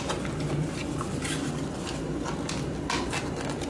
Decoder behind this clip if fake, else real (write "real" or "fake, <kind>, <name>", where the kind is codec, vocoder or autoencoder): real